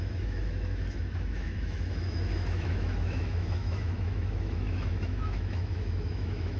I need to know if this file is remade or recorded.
remade